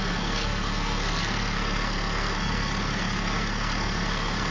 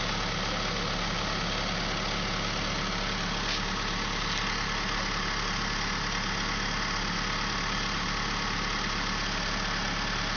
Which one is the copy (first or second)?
first